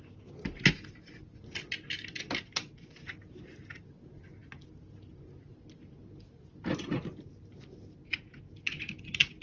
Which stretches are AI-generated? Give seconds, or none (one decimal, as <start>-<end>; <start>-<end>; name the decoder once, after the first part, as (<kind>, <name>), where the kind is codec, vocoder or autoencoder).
none